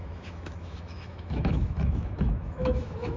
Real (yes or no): no